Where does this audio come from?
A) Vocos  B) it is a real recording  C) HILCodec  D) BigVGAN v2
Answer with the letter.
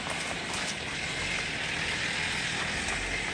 B